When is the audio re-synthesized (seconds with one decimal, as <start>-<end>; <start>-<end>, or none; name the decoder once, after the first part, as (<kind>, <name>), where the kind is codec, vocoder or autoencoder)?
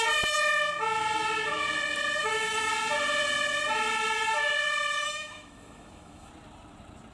2.2-2.7 (autoencoder, DAC-VAE); 5.0-6.3